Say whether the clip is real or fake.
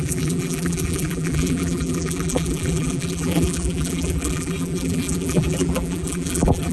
fake